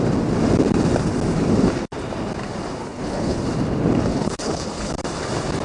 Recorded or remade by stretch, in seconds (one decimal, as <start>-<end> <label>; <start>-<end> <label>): 0.0-2.8 recorded; 2.8-3.4 remade; 3.4-4.1 recorded; 4.1-4.9 remade; 4.9-5.6 recorded